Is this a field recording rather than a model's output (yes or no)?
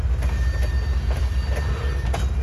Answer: yes